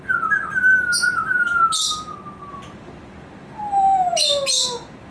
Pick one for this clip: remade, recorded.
recorded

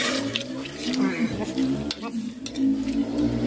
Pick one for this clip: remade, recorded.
recorded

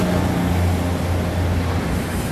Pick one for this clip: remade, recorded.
recorded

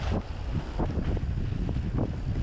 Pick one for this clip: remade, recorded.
recorded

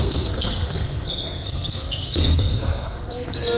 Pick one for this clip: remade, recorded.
remade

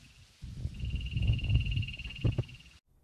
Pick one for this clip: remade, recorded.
recorded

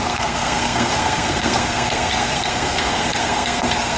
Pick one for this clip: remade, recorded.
remade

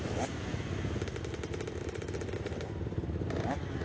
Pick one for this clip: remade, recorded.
recorded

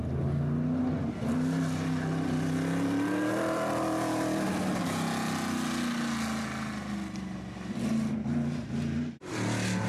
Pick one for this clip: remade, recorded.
recorded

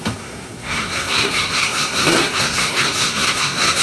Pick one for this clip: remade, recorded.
remade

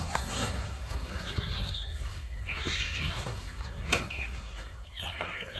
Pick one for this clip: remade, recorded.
remade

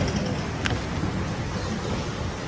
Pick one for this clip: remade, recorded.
recorded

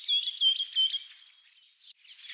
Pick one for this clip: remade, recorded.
recorded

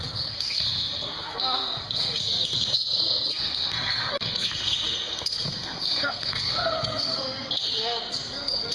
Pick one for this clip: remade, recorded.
remade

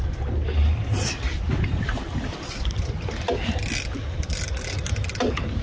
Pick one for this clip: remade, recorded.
recorded